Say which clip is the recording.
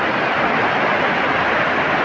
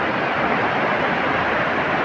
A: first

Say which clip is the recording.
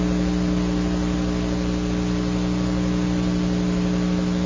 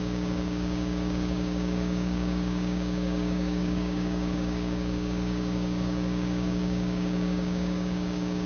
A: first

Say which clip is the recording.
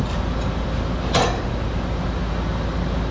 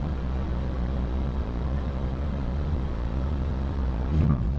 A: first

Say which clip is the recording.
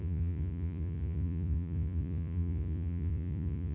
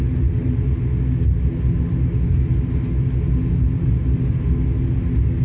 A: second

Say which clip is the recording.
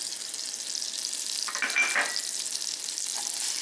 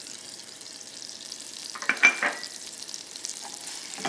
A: first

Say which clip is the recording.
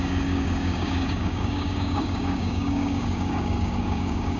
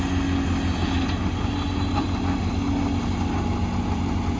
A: second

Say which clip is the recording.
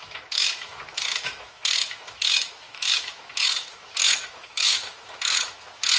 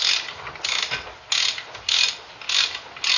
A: second